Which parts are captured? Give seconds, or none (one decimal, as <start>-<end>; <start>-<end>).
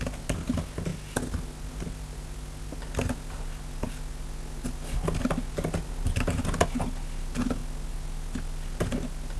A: 0.0-9.4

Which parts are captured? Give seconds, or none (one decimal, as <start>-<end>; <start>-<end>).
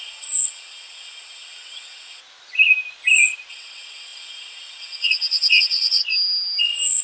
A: 2.2-3.5; 6.0-6.6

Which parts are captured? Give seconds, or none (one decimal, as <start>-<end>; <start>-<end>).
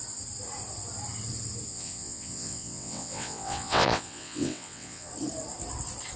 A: 0.0-1.7; 5.1-6.2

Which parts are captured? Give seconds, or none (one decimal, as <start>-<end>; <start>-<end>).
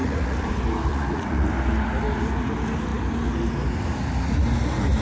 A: 0.5-0.9; 1.5-5.0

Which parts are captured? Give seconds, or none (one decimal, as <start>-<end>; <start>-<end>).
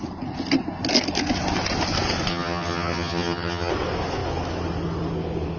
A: 0.0-2.3; 3.7-5.6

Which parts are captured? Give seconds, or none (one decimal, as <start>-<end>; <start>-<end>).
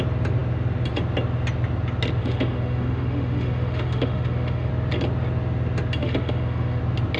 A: 0.0-2.2; 4.7-6.0; 6.8-7.2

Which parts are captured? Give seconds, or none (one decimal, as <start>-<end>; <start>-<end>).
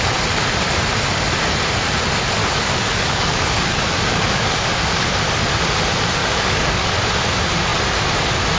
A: 0.0-2.4; 5.1-6.2; 7.0-8.6